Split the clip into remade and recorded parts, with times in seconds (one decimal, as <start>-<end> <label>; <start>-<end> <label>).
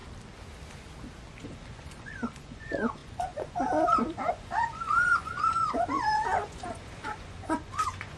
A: 0.0-1.4 recorded; 1.4-8.2 remade